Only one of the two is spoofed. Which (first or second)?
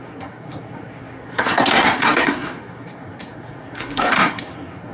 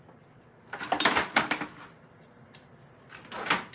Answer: first